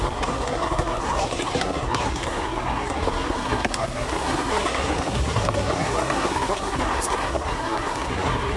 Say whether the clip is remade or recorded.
remade